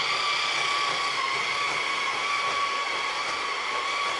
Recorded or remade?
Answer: recorded